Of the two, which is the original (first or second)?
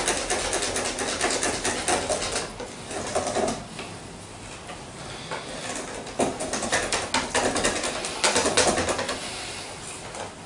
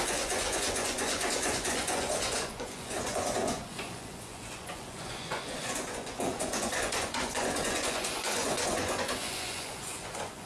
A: first